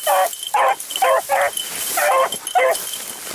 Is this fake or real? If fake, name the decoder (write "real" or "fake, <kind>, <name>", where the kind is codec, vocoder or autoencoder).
real